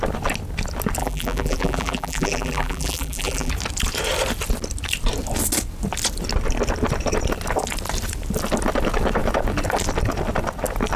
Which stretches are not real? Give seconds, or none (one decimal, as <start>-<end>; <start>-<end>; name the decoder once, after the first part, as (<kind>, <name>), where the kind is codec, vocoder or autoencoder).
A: 1.0-3.5 (vocoder, BigVGAN v2)